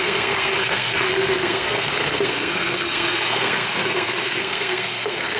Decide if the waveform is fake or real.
fake